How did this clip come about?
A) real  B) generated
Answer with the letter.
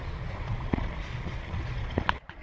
B